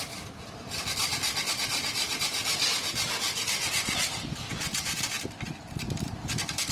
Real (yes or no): yes